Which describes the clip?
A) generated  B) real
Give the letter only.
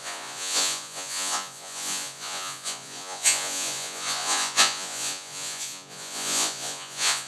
A